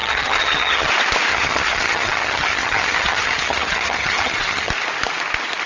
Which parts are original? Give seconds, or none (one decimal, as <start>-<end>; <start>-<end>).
0.9-1.3; 4.7-5.7